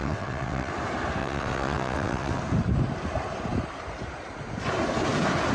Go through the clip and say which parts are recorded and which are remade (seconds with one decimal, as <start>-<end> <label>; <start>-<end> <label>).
0.0-0.7 remade; 0.7-1.2 recorded; 1.2-2.4 remade; 2.4-5.5 recorded